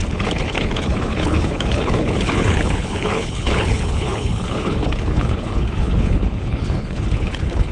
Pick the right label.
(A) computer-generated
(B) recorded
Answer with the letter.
A